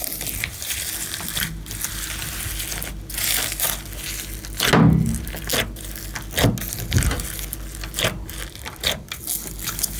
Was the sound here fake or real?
real